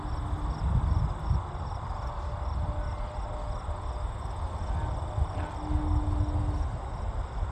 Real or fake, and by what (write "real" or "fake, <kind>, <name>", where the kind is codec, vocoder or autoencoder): real